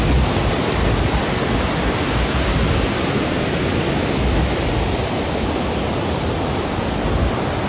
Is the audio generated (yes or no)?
no